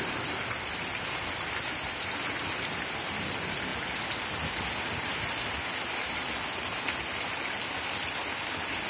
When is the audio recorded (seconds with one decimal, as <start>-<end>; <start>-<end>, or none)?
0.0-8.9